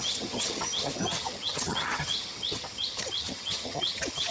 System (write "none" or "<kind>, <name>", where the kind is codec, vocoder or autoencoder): vocoder, HiFi-GAN